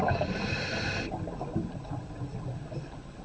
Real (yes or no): yes